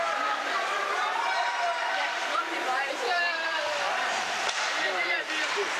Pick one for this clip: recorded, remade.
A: remade